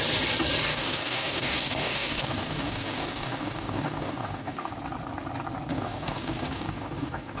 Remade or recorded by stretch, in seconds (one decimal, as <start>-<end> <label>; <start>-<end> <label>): 0.0-0.7 recorded; 0.7-4.7 remade; 4.7-5.7 recorded; 5.7-7.4 remade